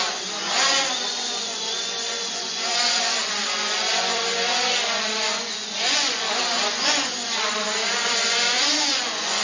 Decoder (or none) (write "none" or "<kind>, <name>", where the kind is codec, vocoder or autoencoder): vocoder, Vocos